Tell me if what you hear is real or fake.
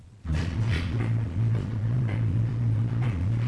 fake